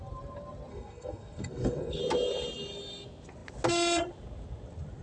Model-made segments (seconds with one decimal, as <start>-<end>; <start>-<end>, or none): 0.7-2.0